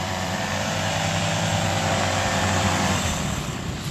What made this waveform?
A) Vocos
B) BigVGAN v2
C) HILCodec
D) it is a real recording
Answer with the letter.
B